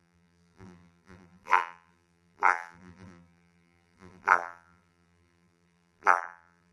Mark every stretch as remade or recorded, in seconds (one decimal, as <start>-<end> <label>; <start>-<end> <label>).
0.0-6.7 remade